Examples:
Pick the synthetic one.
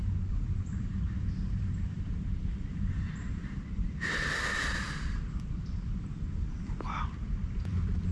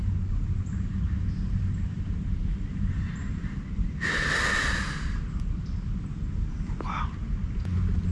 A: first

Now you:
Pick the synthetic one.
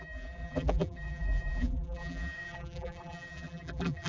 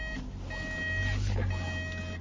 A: first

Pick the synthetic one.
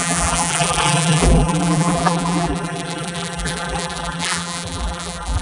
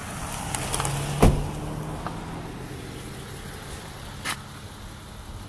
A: first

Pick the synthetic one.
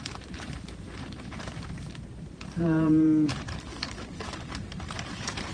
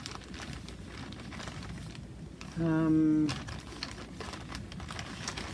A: first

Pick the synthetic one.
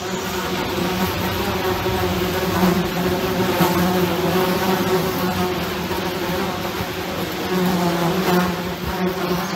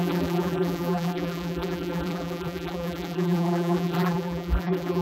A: second